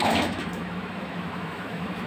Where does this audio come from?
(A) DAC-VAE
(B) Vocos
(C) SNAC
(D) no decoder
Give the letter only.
A